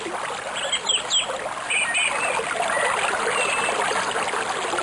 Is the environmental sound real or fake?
real